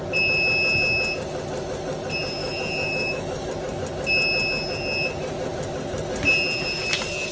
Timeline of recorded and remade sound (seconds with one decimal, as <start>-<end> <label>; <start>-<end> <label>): 0.0-2.4 recorded; 2.4-3.5 remade; 3.5-7.3 recorded